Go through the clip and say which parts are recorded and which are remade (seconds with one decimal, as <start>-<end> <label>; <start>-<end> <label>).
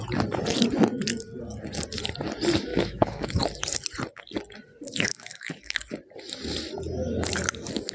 0.0-2.7 recorded; 2.7-3.4 remade; 3.4-5.1 recorded; 5.1-5.8 remade; 5.8-7.9 recorded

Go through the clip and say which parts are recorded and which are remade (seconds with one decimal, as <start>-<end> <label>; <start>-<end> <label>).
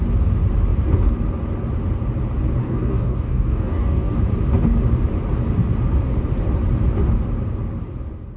0.0-2.6 recorded; 2.6-4.2 remade; 4.2-8.4 recorded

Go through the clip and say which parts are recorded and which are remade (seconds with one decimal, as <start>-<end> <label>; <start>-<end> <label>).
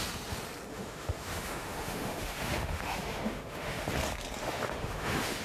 0.0-0.7 recorded; 0.7-3.9 remade; 3.9-4.4 recorded; 4.4-5.4 remade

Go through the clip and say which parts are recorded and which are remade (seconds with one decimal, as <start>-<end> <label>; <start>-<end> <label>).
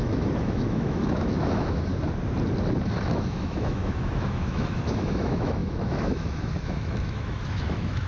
0.0-1.9 remade; 1.9-3.0 recorded; 3.0-8.1 remade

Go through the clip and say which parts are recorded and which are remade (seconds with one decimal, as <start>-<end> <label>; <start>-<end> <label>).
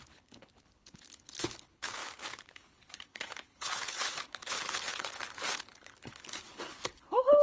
0.0-7.4 remade